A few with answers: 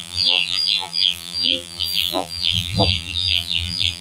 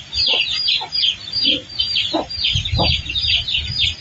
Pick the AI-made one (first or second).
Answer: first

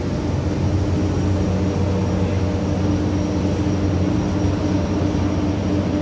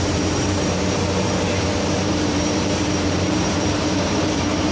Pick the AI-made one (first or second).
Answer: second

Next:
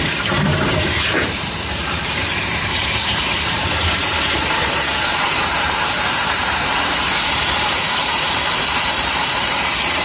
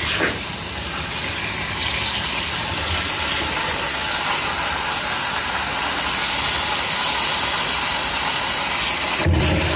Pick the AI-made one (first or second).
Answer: first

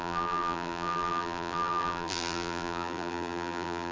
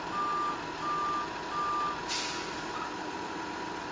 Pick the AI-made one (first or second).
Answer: first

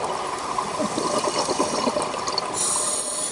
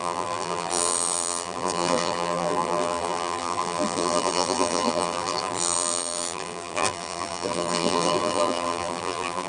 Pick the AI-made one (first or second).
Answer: second